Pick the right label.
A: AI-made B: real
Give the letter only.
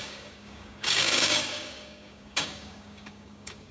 A